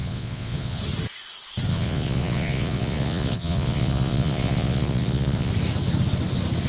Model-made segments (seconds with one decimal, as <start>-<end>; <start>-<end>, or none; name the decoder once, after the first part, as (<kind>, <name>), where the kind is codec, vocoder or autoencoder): 0.0-0.8 (vocoder, Vocos); 1.7-5.5